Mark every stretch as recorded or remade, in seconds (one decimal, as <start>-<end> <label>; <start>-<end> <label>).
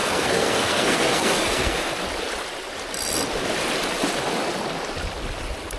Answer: 0.0-1.9 remade; 1.9-5.8 recorded